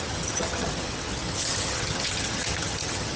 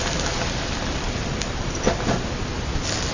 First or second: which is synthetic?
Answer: first